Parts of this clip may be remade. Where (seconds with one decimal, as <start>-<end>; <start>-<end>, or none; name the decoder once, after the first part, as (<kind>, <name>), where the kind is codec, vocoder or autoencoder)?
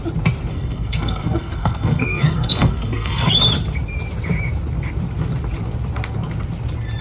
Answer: 0.5-3.3 (codec, SNAC)